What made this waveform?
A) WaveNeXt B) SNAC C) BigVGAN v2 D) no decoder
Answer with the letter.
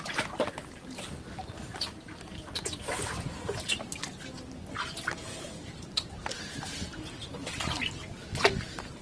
D